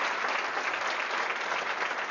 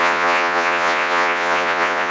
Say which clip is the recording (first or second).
first